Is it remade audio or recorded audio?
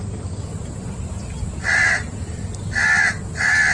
recorded